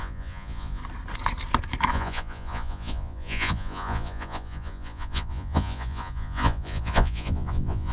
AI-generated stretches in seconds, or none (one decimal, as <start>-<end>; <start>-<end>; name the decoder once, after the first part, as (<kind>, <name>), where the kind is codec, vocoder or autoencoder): 0.0-0.8 (vocoder, Vocos); 1.9-7.9